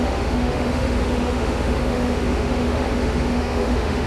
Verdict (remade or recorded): remade